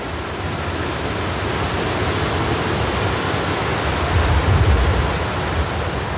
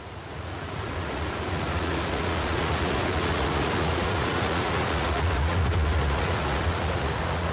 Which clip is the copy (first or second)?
second